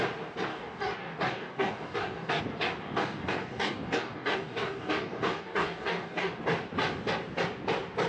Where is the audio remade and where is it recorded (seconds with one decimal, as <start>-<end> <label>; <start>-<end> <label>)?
0.0-0.5 recorded; 0.5-2.4 remade; 2.4-2.8 recorded; 2.8-6.3 remade; 6.3-8.1 recorded